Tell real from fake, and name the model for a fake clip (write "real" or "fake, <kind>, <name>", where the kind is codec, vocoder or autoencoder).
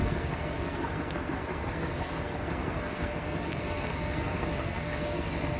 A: fake, codec, SNAC